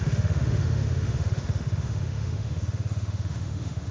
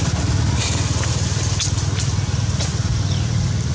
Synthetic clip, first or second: first